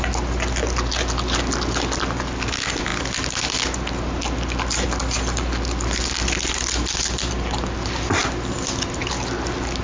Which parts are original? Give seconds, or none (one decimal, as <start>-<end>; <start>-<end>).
0.0-9.8